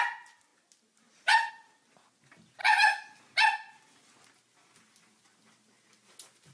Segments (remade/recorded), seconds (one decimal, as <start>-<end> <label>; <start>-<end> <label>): 0.0-6.5 recorded